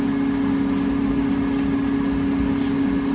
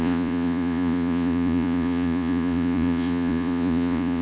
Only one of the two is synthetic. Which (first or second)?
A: second